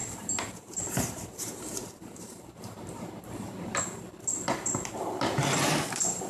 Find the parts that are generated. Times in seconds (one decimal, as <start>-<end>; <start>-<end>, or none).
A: 0.0-3.8